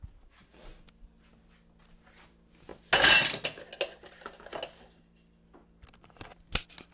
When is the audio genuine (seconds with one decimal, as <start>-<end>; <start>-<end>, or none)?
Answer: 0.0-6.9